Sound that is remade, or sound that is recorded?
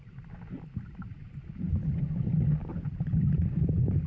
recorded